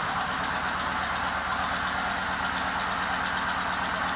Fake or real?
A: real